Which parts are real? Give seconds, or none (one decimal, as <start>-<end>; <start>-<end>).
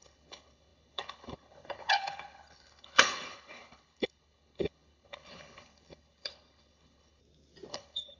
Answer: 7.2-7.7